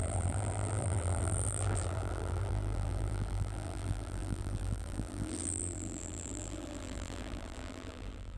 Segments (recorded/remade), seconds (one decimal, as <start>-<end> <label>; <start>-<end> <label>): 0.0-8.4 remade